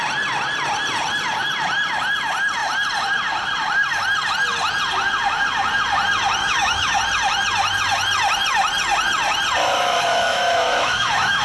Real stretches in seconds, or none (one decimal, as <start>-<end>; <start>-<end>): 0.0-6.4; 7.0-9.6

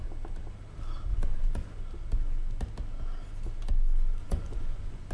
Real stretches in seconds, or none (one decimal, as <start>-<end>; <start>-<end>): 0.0-1.1; 1.8-4.2

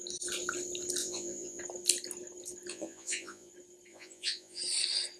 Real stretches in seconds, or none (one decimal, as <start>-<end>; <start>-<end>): 0.0-1.0; 1.6-2.7; 3.5-3.9; 4.6-5.2

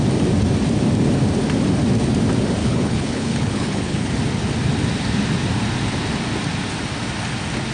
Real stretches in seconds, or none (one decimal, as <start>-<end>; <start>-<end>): 0.0-2.6; 4.1-7.7

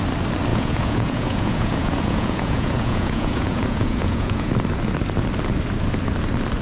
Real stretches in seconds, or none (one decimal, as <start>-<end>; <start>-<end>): 0.0-0.5; 4.5-6.6

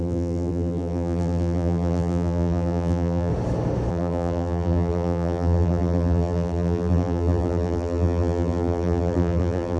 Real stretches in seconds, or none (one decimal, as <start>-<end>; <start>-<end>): 3.3-3.9